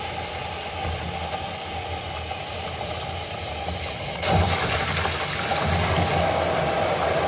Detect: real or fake real